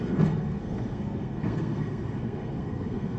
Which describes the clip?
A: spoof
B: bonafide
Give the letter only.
A